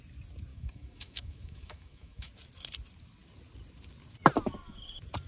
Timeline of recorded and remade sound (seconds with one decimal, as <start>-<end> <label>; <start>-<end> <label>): 0.0-0.5 recorded; 0.5-2.3 remade; 2.3-5.3 recorded

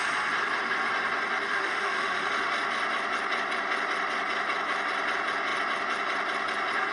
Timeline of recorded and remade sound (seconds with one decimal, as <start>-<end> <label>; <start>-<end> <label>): 0.0-1.5 recorded; 1.5-2.3 remade; 2.3-6.9 recorded

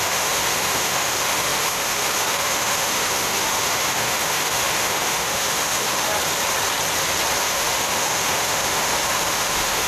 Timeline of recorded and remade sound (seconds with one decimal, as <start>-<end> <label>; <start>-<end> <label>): 0.0-6.1 remade; 6.1-7.4 recorded; 7.4-9.9 remade

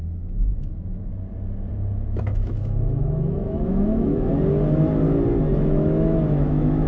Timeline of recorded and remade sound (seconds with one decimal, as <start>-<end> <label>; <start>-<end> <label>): 0.0-1.1 remade; 1.1-1.7 recorded; 1.7-4.3 remade; 4.3-5.6 recorded; 5.6-6.9 remade

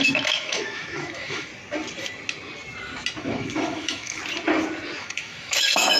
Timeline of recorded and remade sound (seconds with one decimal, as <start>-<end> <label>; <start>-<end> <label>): 0.0-1.5 remade; 1.5-3.2 recorded; 3.2-4.2 remade; 4.2-5.0 recorded; 5.0-6.0 remade

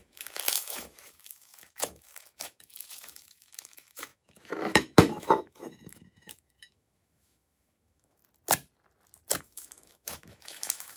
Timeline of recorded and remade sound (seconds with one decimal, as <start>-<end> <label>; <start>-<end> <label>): 0.0-8.2 remade; 8.2-9.4 recorded; 9.4-11.0 remade

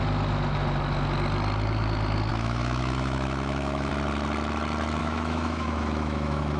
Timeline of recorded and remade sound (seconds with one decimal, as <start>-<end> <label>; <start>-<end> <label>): 0.0-2.3 recorded; 2.3-3.9 remade; 3.9-5.0 recorded; 5.0-6.6 remade

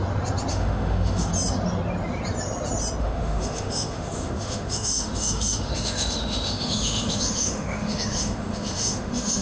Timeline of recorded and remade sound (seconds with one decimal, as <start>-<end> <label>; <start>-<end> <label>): 0.0-0.5 recorded; 0.5-1.3 remade; 1.3-3.0 recorded; 3.0-9.4 remade